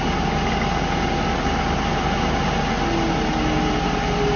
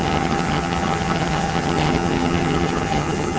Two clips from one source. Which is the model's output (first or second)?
second